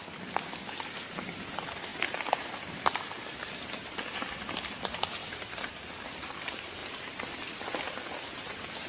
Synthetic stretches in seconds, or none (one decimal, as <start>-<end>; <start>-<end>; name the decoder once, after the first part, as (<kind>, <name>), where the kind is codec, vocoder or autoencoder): none